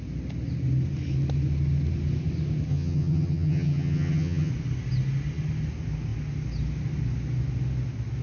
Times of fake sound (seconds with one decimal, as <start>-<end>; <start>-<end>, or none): 2.7-4.5